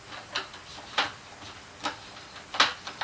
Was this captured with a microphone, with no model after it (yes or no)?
yes